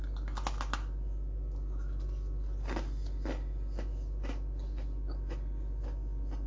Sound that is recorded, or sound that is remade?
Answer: recorded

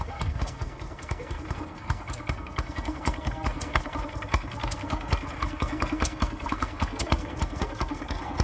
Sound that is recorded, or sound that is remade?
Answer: remade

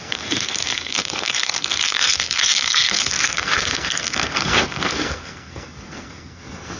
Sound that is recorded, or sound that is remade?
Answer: remade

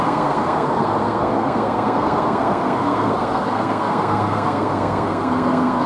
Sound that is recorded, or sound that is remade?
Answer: remade